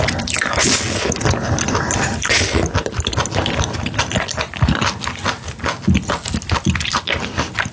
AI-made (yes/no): no